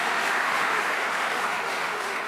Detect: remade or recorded remade